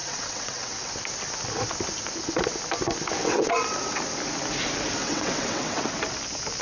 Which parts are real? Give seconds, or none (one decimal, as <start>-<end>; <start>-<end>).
0.9-3.2; 4.0-5.0; 5.9-6.6